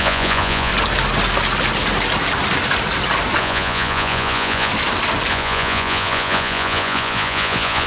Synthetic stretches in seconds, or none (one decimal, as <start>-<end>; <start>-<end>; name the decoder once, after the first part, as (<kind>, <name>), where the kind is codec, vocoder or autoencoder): 0.0-0.7 (vocoder, Vocos); 3.4-4.7; 5.3-7.9